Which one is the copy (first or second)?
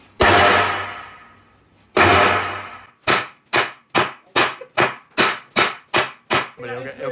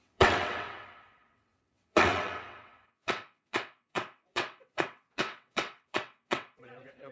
second